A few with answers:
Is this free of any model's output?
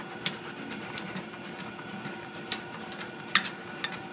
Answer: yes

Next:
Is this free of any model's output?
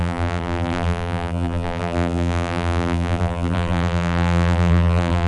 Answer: no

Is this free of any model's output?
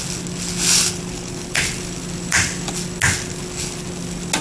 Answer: yes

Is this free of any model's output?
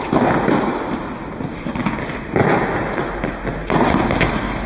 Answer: yes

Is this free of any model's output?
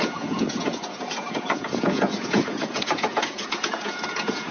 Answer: no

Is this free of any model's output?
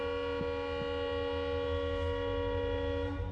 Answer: yes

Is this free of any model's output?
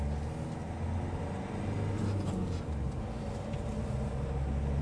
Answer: yes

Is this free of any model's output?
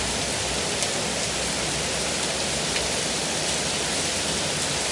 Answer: yes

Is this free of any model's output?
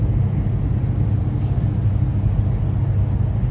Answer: yes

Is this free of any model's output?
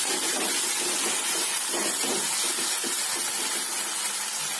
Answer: yes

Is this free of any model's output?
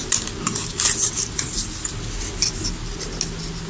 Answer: yes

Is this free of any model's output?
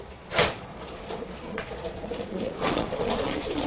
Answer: no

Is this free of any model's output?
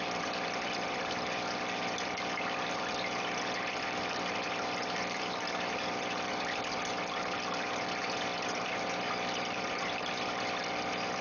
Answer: no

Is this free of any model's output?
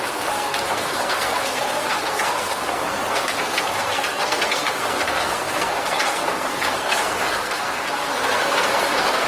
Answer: no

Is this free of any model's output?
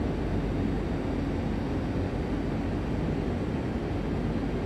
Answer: yes